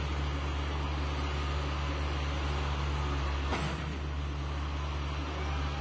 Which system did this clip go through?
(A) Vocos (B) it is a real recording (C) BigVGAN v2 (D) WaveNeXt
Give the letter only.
B